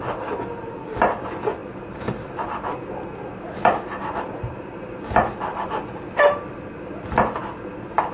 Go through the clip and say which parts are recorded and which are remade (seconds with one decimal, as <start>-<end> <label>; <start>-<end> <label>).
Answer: 0.0-8.1 recorded